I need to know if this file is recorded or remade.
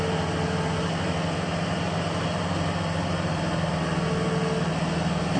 recorded